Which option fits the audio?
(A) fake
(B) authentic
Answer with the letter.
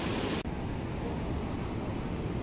B